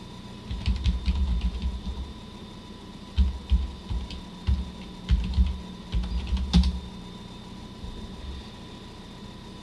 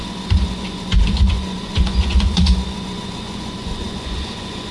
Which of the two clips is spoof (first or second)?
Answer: second